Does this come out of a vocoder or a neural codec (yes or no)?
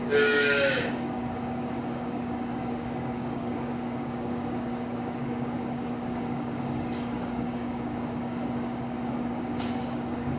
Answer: yes